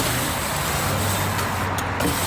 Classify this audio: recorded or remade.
recorded